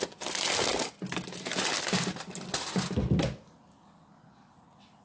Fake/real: real